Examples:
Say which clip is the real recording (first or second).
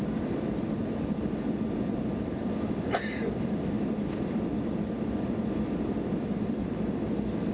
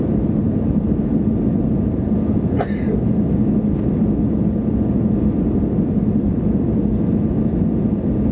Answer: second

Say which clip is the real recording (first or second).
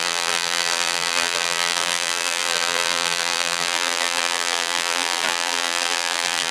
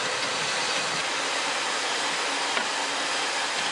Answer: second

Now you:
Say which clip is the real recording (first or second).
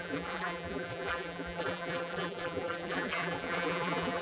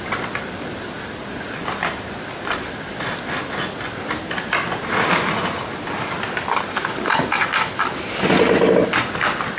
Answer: second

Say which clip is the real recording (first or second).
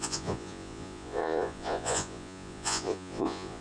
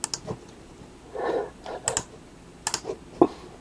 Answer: second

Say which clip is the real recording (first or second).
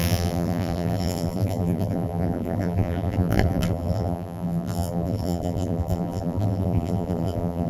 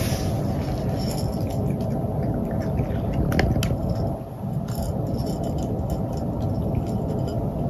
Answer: second